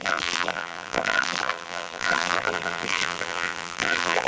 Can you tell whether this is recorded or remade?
remade